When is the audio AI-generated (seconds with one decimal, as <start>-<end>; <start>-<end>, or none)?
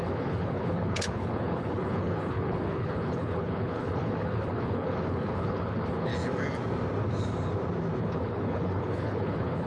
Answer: 0.0-6.1; 8.0-9.7